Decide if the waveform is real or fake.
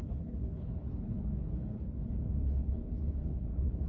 fake